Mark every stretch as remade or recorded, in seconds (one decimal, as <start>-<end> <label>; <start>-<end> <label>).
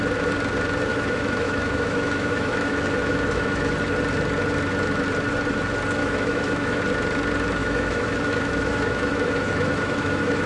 0.0-0.9 recorded; 0.9-3.7 remade; 3.7-6.0 recorded; 6.0-6.8 remade; 6.8-7.6 recorded; 7.6-10.5 remade